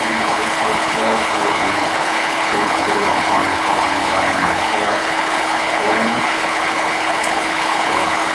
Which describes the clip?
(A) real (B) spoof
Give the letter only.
B